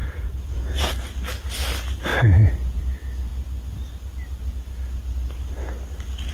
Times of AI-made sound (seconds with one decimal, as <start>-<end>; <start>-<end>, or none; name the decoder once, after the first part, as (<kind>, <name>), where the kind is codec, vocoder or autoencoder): 0.0-0.9 (vocoder, Vocos); 2.1-2.8